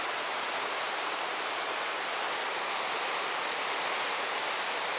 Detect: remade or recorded remade